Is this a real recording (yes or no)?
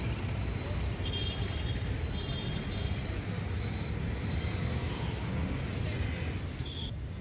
yes